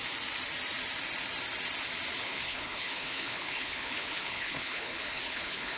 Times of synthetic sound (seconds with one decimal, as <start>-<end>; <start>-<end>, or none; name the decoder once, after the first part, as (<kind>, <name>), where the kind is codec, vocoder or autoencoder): 2.2-5.8 (codec, HILCodec)